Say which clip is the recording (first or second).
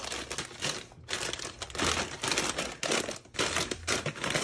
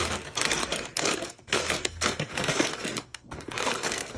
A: first